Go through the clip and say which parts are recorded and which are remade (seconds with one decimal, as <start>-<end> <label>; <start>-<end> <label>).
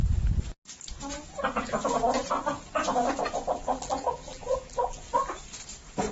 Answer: 0.0-3.5 recorded; 3.5-5.0 remade; 5.0-6.1 recorded